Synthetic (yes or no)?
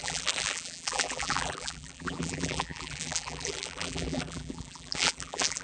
yes